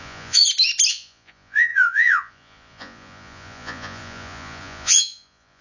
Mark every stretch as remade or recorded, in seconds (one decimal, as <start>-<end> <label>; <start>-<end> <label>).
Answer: 0.0-0.4 remade; 0.4-0.9 recorded; 0.9-5.6 remade